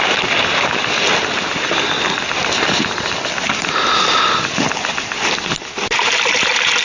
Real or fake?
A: real